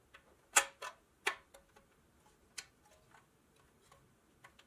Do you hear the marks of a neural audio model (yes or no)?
no